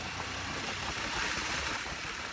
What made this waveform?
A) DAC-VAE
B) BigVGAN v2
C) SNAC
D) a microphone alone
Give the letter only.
D